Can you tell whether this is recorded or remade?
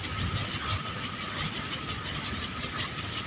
recorded